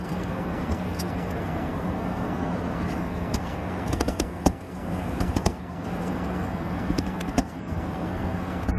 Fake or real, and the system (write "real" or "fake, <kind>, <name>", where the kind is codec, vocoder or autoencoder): fake, codec, SNAC